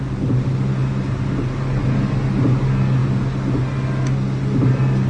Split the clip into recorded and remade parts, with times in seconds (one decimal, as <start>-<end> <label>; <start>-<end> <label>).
0.0-5.1 recorded